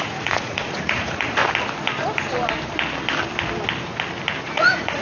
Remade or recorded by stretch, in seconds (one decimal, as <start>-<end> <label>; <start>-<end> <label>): 0.0-1.4 remade; 1.4-4.4 recorded; 4.4-5.0 remade